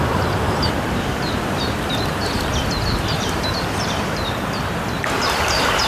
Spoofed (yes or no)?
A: yes